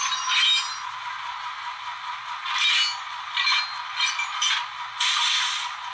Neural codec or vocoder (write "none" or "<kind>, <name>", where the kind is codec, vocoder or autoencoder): none